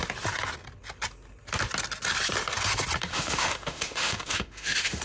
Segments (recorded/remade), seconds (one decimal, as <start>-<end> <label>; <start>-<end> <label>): 0.0-3.1 recorded; 3.1-5.0 remade